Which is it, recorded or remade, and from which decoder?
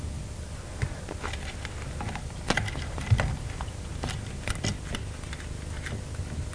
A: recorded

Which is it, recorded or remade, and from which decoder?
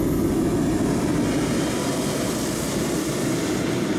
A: recorded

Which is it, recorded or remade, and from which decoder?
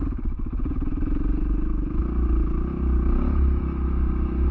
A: recorded